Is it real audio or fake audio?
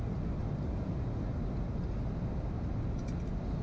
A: real